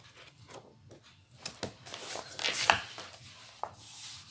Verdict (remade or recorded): recorded